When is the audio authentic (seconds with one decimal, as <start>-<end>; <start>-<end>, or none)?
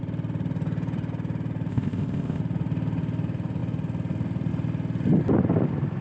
0.0-1.7; 2.4-6.0